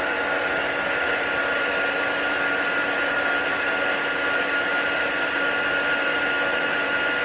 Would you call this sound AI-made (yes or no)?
no